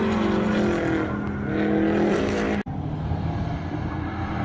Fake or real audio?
real